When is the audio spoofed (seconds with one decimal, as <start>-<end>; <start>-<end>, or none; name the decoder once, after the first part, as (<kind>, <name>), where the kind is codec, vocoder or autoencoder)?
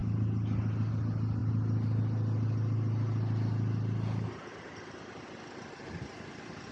none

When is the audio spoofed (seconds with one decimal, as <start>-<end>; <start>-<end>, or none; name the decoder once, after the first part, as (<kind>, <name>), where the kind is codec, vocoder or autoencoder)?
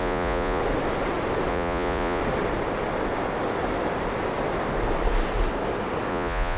0.0-0.6 (vocoder, Vocos); 1.5-2.2; 6.1-6.6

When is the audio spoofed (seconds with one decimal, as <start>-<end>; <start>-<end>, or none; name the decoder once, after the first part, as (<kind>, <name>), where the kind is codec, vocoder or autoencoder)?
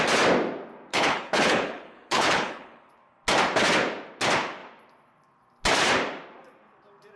0.9-2.9 (codec, HILCodec)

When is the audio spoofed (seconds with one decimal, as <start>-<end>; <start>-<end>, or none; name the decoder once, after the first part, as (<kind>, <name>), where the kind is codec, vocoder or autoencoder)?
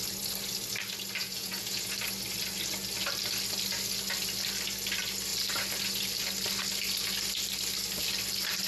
1.2-1.9 (vocoder, Vocos)